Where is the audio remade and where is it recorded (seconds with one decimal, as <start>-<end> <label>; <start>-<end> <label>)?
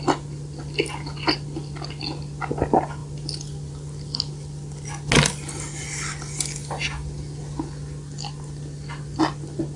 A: 0.0-9.8 recorded